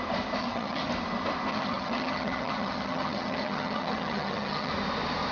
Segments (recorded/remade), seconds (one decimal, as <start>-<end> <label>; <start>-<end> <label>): 0.0-0.4 recorded; 0.4-0.9 remade; 0.9-1.5 recorded; 1.5-4.7 remade; 4.7-5.3 recorded